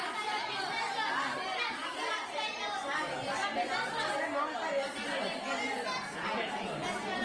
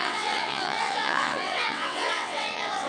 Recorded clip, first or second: first